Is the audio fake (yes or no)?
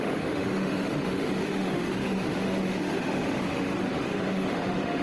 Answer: yes